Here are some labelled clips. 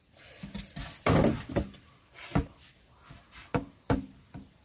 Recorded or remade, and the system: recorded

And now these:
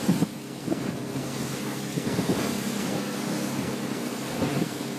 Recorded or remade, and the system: remade, codec, SNAC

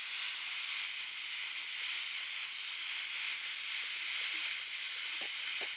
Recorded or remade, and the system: recorded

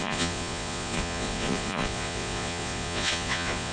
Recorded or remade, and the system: remade, vocoder, Vocos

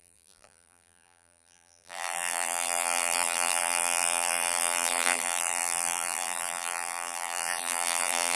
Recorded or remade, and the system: remade, vocoder, BigVGAN v2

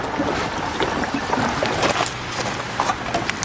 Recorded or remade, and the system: recorded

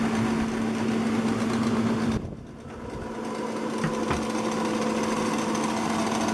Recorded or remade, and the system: recorded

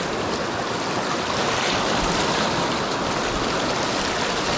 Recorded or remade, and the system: recorded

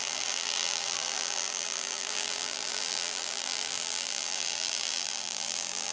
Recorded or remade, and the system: remade, vocoder, BigVGAN v2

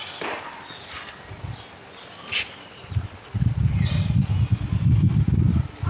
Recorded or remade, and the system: recorded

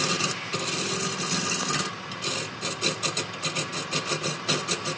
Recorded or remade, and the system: recorded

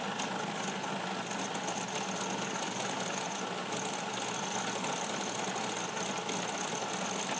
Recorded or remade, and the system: recorded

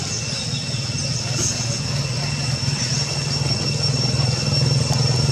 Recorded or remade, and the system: recorded